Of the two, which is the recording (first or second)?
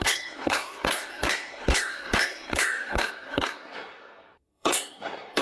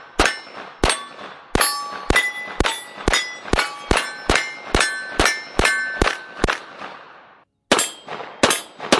second